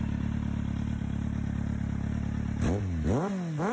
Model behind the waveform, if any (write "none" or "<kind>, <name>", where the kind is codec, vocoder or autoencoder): none